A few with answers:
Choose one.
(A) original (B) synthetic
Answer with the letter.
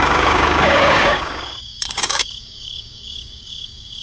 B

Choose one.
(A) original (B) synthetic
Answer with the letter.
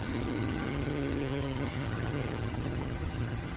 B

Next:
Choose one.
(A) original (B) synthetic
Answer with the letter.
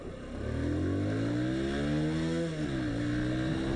A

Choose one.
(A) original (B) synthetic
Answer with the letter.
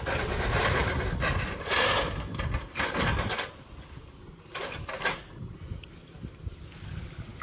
A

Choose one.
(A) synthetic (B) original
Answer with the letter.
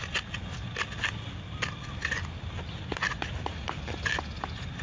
B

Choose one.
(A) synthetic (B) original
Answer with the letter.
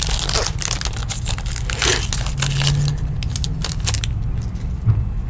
B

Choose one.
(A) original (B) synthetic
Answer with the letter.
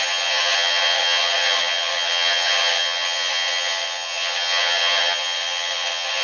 B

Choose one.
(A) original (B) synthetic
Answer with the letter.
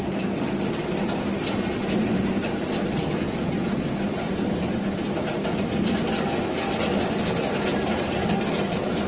A